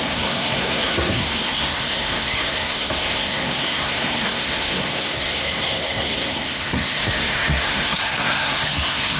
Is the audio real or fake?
fake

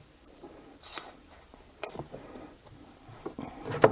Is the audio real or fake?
fake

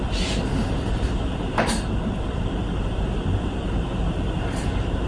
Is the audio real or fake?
fake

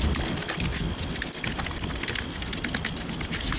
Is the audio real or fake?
real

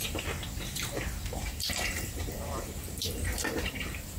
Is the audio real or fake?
fake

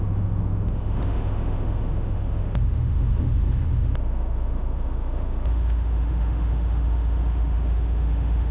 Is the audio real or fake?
fake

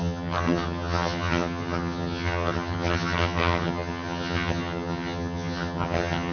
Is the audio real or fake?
fake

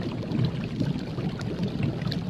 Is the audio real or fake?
real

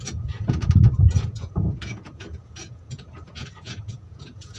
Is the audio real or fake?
fake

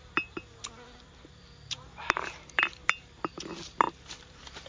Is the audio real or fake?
real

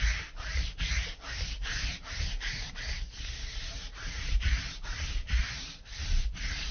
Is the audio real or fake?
fake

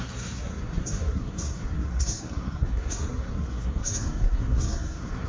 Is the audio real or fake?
fake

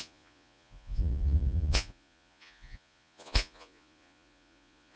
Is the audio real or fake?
fake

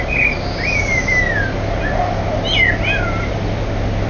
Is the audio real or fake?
real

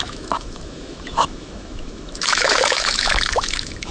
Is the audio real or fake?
fake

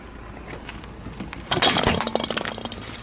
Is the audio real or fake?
real